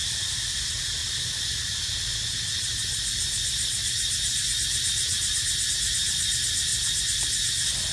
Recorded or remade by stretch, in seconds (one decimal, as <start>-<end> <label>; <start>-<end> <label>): 0.0-0.5 remade; 0.5-6.7 recorded; 6.7-7.9 remade